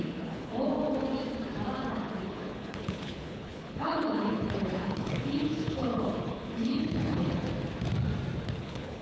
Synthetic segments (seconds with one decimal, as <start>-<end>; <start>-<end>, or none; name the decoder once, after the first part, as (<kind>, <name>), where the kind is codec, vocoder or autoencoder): 0.0-0.7 (codec, HILCodec); 1.9-7.5; 8.6-9.0